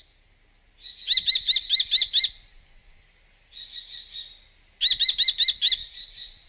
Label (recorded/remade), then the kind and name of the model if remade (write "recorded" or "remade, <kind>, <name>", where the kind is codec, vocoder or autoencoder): recorded